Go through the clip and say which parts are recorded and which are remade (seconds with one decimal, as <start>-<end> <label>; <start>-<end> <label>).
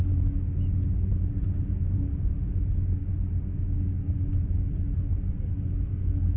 0.0-6.4 recorded